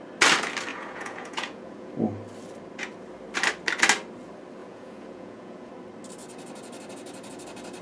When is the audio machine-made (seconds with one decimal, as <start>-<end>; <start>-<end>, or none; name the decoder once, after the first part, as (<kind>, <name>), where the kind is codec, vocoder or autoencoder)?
0.7-1.9 (vocoder, Vocos); 4.6-5.7